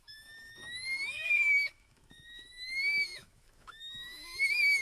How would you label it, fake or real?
fake